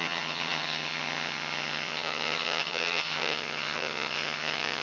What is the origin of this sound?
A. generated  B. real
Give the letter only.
A